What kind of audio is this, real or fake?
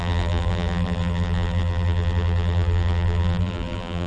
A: fake